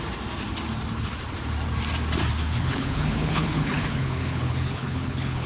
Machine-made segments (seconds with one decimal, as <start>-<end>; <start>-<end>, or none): 2.4-5.5